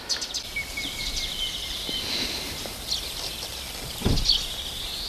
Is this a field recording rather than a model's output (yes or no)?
yes